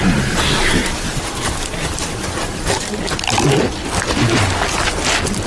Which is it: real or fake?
real